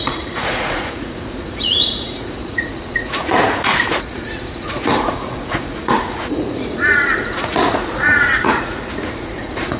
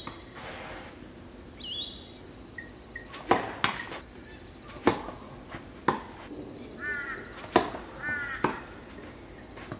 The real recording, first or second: second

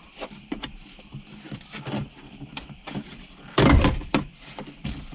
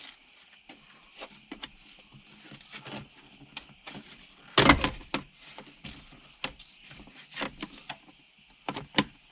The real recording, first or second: second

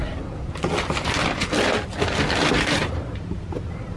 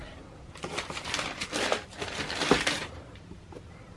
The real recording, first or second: first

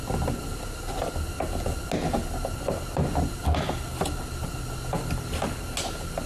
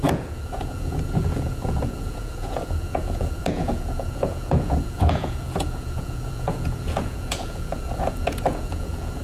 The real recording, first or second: first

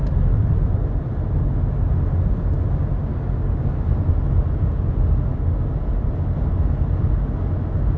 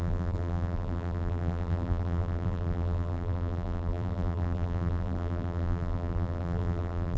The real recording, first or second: first